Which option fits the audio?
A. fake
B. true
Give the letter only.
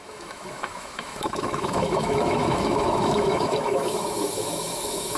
A